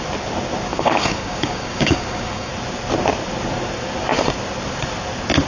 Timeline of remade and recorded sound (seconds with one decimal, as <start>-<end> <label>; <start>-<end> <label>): 0.0-0.7 recorded; 0.7-2.5 remade; 2.5-5.5 recorded